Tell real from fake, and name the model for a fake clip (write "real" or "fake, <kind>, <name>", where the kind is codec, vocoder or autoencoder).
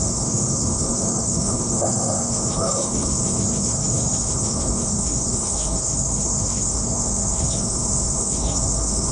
fake, codec, SNAC